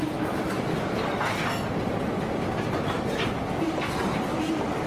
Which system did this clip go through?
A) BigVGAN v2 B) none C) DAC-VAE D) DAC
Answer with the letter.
B